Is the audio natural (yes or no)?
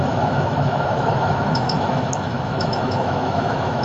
no